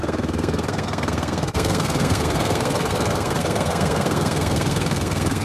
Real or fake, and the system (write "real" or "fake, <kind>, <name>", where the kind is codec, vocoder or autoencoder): fake, codec, SNAC